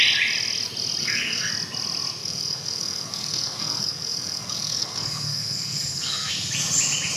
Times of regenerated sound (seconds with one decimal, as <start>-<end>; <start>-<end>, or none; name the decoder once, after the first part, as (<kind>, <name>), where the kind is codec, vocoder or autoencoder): 1.0-1.5 (codec, SNAC); 2.2-6.3